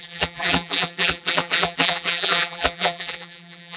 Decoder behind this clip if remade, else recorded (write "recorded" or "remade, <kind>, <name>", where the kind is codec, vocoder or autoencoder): remade, vocoder, BigVGAN v2